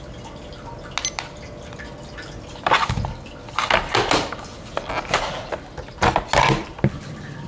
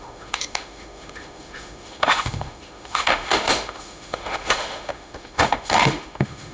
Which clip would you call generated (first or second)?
second